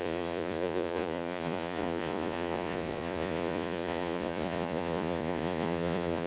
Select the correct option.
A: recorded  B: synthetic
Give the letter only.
B